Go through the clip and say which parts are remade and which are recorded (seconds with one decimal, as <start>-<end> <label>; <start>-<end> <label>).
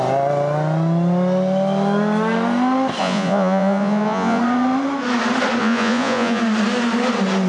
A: 0.0-3.0 recorded; 3.0-4.4 remade; 4.4-5.6 recorded; 5.6-6.4 remade; 6.4-7.5 recorded